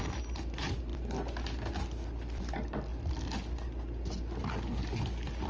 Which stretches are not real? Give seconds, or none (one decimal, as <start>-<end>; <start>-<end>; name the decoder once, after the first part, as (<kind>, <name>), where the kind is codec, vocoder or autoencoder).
none